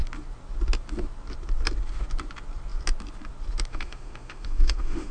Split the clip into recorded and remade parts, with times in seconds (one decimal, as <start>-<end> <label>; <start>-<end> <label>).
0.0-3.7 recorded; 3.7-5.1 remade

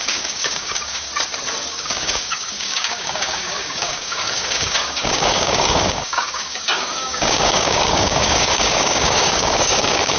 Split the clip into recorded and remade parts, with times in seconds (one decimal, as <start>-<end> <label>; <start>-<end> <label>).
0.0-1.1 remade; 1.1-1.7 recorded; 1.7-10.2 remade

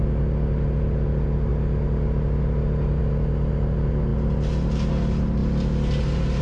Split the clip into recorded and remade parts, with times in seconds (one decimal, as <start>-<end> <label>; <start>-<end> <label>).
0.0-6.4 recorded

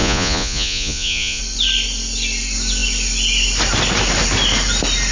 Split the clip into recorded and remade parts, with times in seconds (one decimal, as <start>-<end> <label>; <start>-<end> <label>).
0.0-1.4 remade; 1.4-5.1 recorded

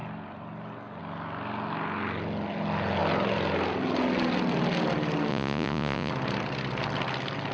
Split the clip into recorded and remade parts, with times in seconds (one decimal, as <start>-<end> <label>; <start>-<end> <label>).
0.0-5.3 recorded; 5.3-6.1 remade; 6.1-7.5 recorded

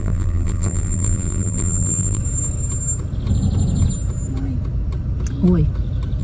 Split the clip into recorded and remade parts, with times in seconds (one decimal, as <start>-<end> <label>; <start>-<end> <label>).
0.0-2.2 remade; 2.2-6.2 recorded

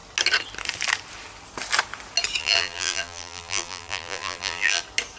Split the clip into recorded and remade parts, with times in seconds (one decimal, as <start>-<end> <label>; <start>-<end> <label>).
0.0-2.4 recorded; 2.4-4.8 remade; 4.8-5.2 recorded

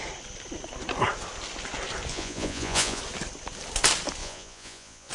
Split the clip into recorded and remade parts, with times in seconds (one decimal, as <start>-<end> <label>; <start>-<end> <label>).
0.0-2.1 recorded; 2.1-3.0 remade; 3.0-4.2 recorded; 4.2-5.1 remade